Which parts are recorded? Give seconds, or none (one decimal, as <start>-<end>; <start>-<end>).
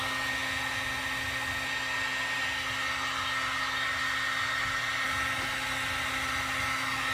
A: 0.0-7.1